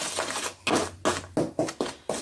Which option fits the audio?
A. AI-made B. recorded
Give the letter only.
B